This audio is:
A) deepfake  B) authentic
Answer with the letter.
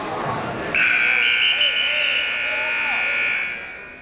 B